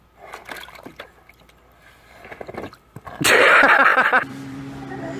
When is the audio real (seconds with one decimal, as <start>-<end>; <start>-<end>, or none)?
0.0-3.9; 4.6-5.2